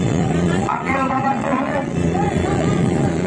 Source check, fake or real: fake